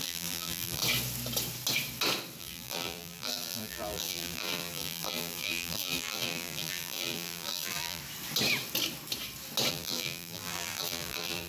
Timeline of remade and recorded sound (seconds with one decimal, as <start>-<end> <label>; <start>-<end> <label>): 0.0-0.8 remade; 0.8-2.4 recorded; 2.4-8.0 remade; 8.0-9.7 recorded; 9.7-11.5 remade